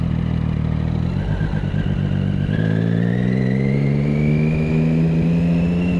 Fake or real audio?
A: real